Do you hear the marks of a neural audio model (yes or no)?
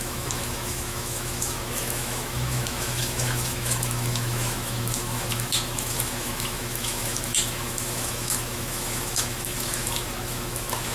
yes